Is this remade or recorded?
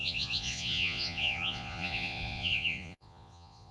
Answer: remade